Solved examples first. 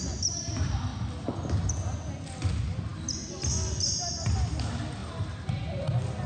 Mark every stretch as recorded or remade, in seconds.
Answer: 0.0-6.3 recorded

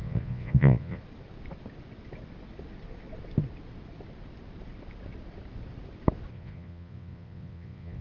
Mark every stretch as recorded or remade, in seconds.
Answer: 0.0-1.0 remade; 1.0-6.3 recorded; 6.3-8.0 remade